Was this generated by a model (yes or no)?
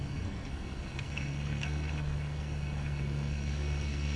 yes